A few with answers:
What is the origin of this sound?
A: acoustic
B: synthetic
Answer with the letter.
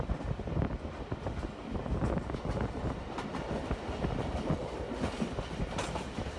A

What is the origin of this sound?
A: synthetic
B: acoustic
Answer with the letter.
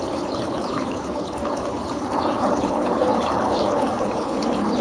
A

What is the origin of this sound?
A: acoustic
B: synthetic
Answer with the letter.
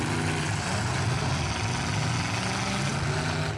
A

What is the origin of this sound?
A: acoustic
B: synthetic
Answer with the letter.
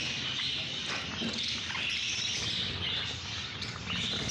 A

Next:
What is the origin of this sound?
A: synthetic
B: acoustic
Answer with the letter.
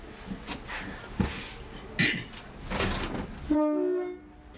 B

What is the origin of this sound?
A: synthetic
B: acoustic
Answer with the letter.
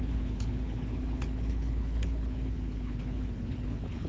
A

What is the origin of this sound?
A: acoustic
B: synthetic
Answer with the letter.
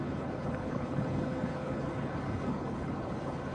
B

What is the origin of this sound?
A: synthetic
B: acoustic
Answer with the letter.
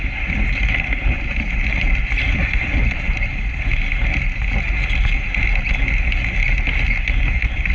B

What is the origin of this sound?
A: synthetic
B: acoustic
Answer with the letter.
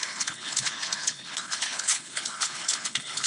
A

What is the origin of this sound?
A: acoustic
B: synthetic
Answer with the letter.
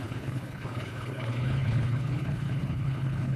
B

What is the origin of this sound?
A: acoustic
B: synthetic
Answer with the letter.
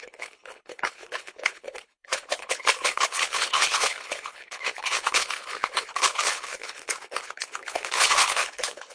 B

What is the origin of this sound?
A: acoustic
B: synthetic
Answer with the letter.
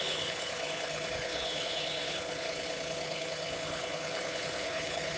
B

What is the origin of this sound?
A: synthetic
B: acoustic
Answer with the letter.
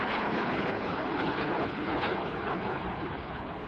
A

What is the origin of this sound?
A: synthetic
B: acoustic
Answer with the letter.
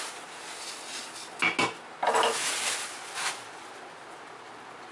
B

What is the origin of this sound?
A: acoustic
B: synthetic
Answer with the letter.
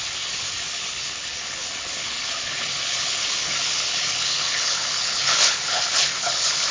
B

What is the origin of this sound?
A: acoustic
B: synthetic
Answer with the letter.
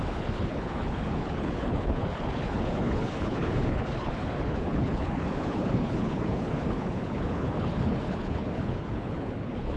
B